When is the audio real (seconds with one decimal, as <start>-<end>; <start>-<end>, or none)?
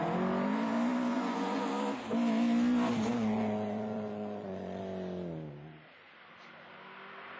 0.0-1.1; 1.7-3.1; 4.8-7.4